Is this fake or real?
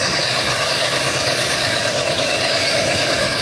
fake